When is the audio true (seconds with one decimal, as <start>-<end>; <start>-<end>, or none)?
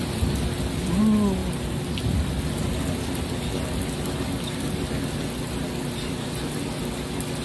0.0-7.4